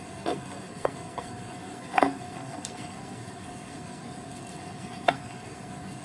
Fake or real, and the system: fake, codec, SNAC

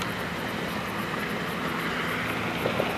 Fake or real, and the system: real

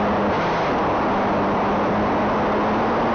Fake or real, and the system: real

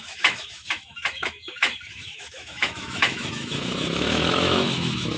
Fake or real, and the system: fake, autoencoder, DAC-VAE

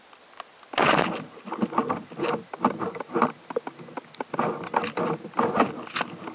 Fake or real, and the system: real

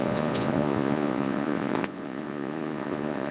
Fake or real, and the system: fake, vocoder, Vocos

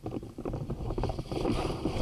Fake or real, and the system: fake, vocoder, BigVGAN v2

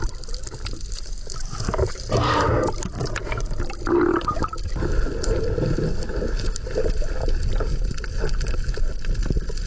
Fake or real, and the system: real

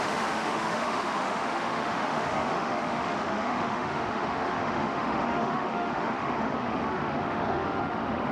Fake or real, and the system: fake, autoencoder, DAC-VAE